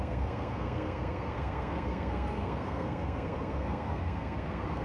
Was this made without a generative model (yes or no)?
no